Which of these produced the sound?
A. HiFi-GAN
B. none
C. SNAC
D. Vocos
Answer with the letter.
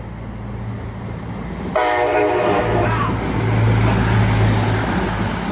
B